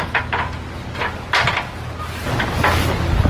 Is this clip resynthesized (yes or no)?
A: no